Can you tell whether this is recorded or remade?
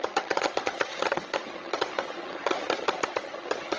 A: remade